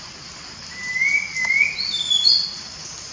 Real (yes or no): yes